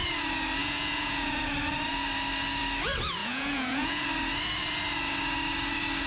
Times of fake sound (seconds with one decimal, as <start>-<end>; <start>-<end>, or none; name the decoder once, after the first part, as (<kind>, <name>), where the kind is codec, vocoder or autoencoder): 0.6-1.3 (vocoder, Vocos); 3.2-4.0